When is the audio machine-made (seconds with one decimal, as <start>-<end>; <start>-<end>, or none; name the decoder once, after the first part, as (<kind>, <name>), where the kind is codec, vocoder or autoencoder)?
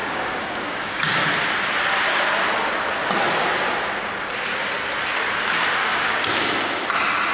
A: 0.0-1.0 (codec, DAC); 5.8-6.4